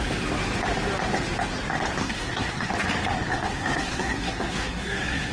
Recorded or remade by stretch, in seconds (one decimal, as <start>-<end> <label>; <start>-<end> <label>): 0.0-2.0 recorded; 2.0-2.7 remade; 2.7-3.3 recorded; 3.3-5.3 remade